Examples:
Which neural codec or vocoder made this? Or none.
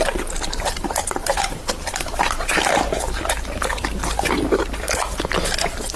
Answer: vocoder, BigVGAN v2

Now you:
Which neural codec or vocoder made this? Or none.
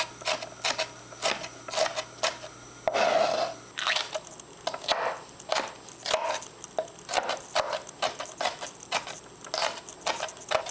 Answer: none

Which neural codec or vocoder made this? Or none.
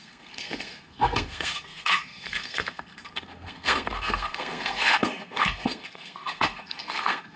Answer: codec, SNAC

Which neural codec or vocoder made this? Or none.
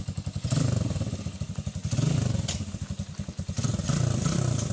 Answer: none